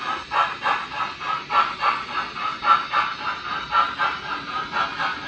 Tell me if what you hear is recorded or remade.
recorded